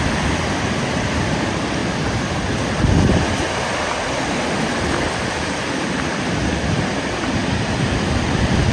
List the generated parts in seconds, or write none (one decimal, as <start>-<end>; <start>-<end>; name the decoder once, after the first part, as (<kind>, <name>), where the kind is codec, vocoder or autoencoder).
0.0-1.8 (vocoder, BigVGAN v2); 6.3-7.4; 8.2-8.7